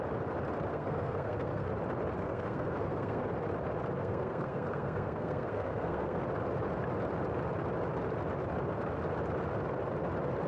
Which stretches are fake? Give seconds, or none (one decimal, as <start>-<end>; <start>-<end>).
0.7-1.7; 2.2-3.3; 4.0-6.2